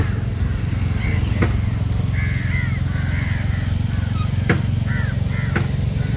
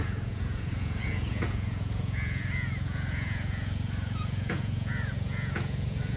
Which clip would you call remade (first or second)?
second